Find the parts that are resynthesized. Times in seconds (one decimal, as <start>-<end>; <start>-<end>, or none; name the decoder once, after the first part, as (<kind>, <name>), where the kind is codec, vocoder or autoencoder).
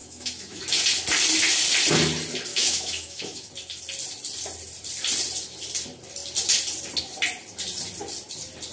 0.0-0.6 (autoencoder, DAC-VAE); 2.5-3.5